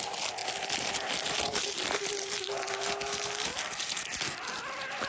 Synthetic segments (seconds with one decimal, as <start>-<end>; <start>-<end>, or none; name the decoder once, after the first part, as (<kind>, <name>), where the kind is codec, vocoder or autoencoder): none